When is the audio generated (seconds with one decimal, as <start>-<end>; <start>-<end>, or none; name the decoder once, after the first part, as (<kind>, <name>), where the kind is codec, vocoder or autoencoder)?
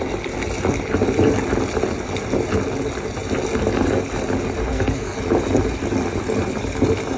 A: 4.7-5.2 (codec, SNAC)